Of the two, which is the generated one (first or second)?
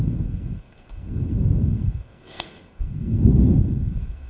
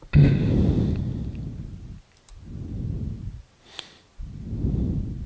first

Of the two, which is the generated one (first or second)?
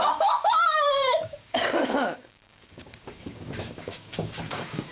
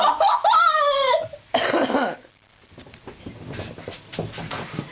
first